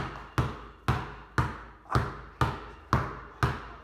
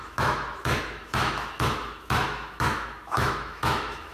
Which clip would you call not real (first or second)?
second